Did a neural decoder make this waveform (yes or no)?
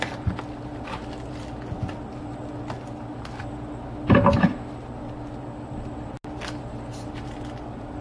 no